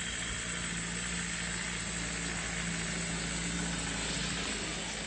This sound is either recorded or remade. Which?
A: recorded